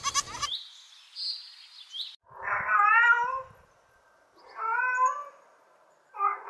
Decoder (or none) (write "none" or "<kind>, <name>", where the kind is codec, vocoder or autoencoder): none